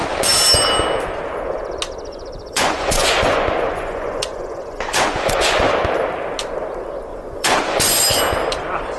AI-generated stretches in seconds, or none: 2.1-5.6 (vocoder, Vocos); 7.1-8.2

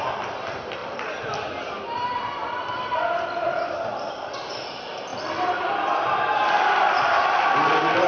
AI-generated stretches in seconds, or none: 0.0-0.8 (vocoder, BigVGAN v2); 2.6-3.9; 4.6-5.1; 6.6-8.1

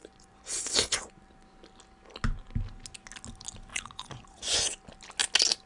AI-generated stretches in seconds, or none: 0.0-1.1 (vocoder, Vocos); 3.7-4.7

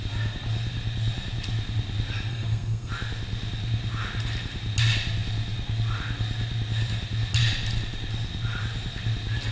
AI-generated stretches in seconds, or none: 2.3-2.9 (codec, SNAC)